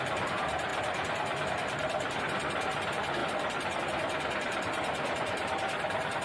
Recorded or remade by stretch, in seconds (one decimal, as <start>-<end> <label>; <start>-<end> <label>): 0.0-6.2 recorded